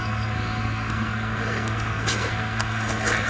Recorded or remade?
remade